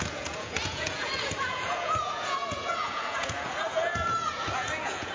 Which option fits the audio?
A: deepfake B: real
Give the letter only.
A